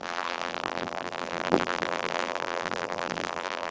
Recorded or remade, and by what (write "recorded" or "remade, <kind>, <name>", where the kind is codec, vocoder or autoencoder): remade, vocoder, BigVGAN v2